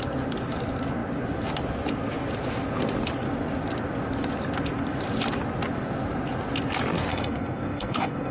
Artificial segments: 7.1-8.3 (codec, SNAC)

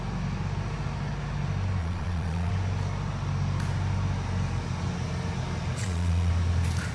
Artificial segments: 1.8-2.5 (vocoder, Vocos); 5.8-6.3